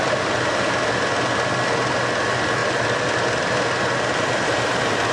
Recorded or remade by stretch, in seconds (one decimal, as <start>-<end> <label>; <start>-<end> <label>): 0.0-2.6 recorded; 2.6-5.1 remade